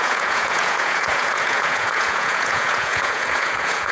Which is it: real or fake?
fake